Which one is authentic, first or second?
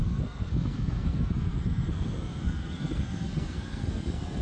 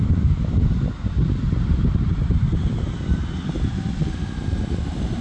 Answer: second